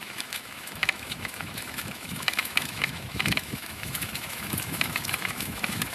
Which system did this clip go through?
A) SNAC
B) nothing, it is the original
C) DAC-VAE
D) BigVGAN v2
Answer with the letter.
C